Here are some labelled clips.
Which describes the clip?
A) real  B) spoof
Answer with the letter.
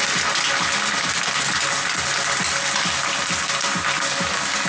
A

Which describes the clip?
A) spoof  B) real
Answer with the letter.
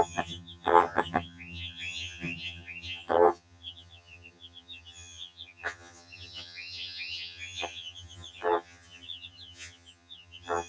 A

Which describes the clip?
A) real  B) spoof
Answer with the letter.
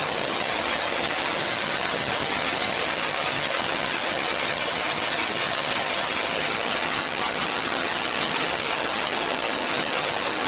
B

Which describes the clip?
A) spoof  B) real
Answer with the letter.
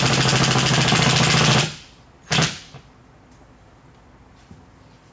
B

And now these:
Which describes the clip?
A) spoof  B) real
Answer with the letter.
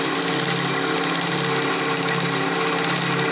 B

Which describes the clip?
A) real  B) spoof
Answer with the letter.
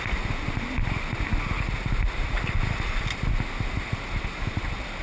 A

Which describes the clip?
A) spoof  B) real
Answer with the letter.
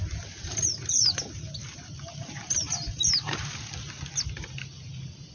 B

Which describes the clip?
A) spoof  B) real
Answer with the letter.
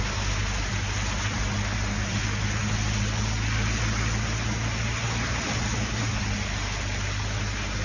B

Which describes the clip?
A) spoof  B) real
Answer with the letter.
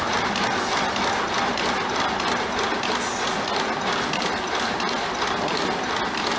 B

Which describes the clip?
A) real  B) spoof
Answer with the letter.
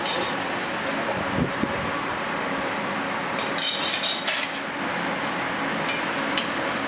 A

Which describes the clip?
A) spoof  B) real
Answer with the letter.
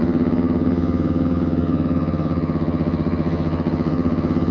A